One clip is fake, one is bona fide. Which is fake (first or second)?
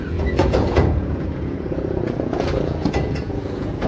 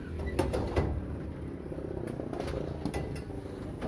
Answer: first